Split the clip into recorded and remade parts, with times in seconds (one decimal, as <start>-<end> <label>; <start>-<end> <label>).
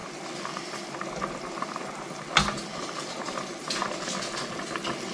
0.0-3.1 remade; 3.1-5.1 recorded